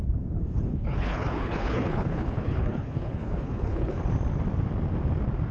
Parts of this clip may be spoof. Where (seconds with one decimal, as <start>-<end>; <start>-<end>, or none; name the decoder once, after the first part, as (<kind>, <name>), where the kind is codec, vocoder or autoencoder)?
0.7-4.0 (codec, HILCodec)